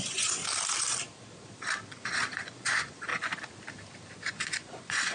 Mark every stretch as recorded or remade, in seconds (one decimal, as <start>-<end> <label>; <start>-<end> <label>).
0.0-0.4 remade; 0.4-1.9 recorded; 1.9-3.1 remade; 3.1-4.3 recorded; 4.3-5.1 remade